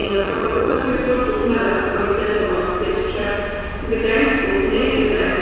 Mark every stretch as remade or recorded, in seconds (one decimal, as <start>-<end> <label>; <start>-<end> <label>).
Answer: 0.0-0.9 remade; 0.9-5.4 recorded